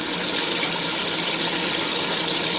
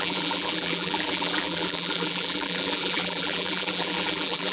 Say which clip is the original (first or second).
first